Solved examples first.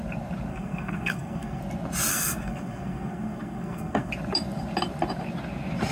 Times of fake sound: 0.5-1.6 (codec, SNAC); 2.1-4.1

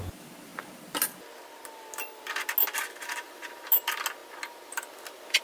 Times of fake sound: none

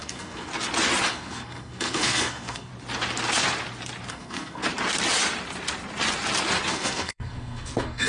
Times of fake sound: 0.0-0.5 (codec, SNAC); 1.1-2.7; 4.1-4.6; 6.7-8.1

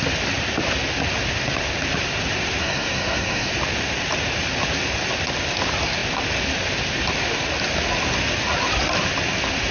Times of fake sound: 2.6-3.5 (codec, SNAC)